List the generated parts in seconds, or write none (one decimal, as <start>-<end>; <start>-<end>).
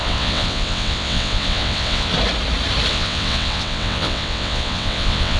0.0-2.1; 2.9-5.4